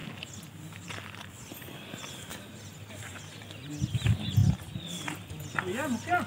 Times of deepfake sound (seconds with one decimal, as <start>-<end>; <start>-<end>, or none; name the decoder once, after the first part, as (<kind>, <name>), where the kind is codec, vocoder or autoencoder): 2.3-3.7 (vocoder, BigVGAN v2); 4.4-5.5